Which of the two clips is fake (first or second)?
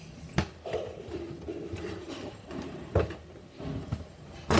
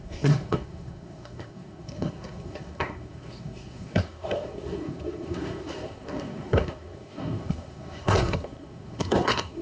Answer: second